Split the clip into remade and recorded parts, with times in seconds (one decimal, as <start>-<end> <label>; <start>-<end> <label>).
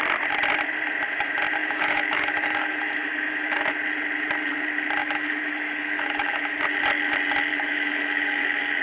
0.0-1.6 recorded; 1.6-3.6 remade; 3.6-5.0 recorded; 5.0-6.6 remade; 6.6-7.5 recorded; 7.5-8.8 remade